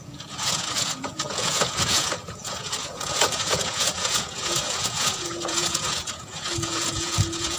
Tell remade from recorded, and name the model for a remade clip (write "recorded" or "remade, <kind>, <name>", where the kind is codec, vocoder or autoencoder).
remade, vocoder, Vocos